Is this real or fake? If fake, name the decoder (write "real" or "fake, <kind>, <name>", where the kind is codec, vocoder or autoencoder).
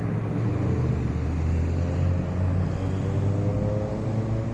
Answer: real